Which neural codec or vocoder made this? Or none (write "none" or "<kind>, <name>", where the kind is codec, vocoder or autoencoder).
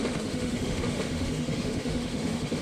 autoencoder, DAC-VAE